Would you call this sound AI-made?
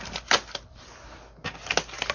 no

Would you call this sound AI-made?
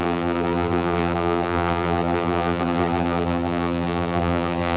yes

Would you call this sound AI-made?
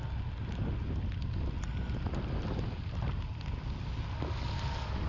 no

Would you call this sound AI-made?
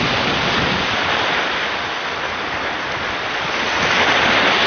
no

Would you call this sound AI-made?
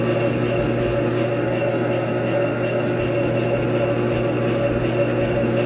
no